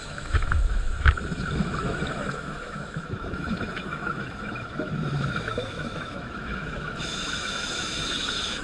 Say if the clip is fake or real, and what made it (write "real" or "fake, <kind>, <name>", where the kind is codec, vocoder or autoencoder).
fake, autoencoder, DAC-VAE